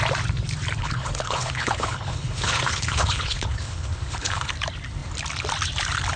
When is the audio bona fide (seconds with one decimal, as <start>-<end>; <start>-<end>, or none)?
0.0-0.8; 4.5-6.2